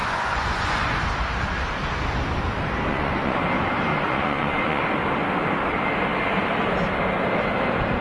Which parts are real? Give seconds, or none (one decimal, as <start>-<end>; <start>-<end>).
1.0-2.9; 3.4-3.9; 4.8-8.0